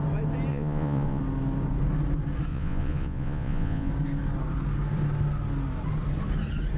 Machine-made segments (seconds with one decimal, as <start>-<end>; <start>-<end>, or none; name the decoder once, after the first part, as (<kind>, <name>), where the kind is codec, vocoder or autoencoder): 0.5-1.2 (vocoder, Vocos); 2.5-3.9